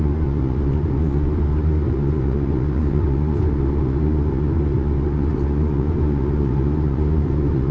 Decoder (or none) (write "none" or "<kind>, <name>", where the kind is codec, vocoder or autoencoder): vocoder, Vocos